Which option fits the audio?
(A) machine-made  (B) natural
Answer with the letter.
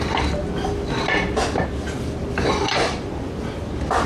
B